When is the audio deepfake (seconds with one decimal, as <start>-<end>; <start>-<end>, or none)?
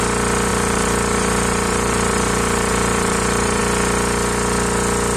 0.5-3.6